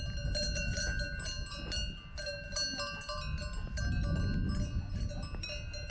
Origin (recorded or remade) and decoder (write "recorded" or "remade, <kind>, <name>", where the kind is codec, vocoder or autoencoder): recorded